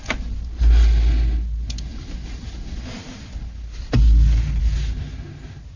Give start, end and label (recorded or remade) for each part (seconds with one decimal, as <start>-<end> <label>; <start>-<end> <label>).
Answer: 0.0-5.8 recorded